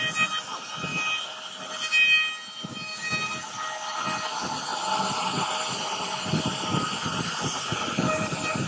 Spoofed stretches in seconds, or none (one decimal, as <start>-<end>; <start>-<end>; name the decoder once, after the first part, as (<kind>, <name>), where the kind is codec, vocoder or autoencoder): 2.7-3.3 (codec, DAC)